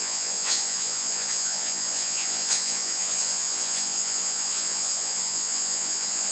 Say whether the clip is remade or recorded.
remade